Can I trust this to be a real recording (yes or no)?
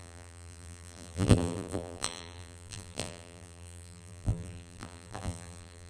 no